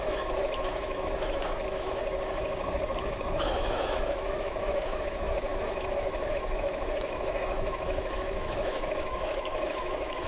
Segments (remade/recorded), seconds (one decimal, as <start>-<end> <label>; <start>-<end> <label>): 0.0-2.0 remade; 2.0-3.0 recorded; 3.0-10.3 remade